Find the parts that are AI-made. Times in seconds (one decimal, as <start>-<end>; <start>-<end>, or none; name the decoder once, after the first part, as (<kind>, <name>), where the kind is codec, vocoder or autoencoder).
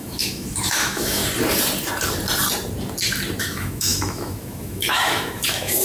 0.0-1.2 (autoencoder, DAC-VAE); 3.4-5.8